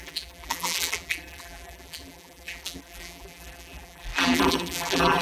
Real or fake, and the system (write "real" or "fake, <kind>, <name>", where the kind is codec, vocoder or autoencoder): fake, vocoder, BigVGAN v2